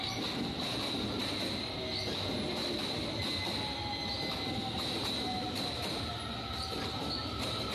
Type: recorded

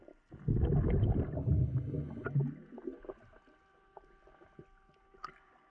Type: recorded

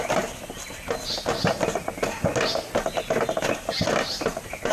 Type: recorded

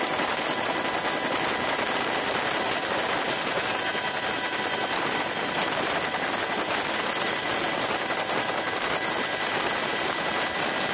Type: recorded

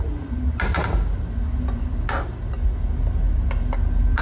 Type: recorded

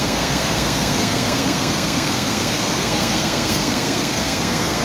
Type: remade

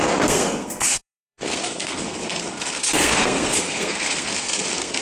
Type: remade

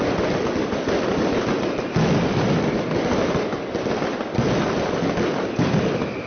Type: recorded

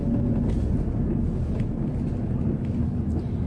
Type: recorded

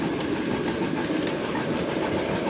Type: recorded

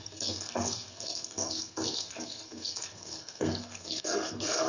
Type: remade